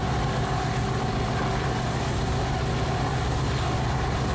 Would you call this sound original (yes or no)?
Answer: yes